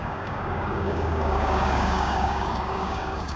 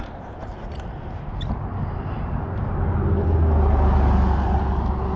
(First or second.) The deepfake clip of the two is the first